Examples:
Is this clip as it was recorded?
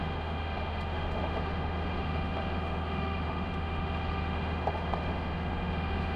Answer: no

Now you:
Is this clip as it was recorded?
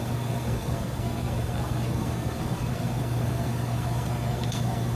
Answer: no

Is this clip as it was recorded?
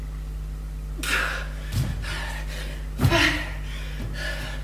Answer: yes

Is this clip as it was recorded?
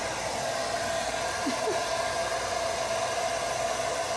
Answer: yes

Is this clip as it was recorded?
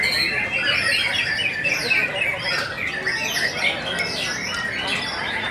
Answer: yes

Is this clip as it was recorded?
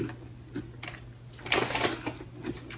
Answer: yes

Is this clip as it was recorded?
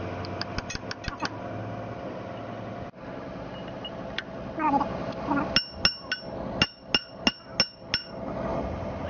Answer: yes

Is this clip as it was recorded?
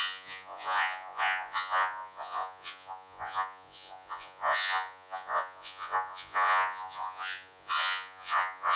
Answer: no